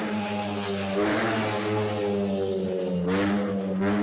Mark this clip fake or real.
real